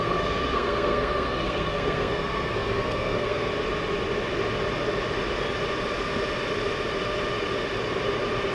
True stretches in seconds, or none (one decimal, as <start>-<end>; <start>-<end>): 3.5-8.5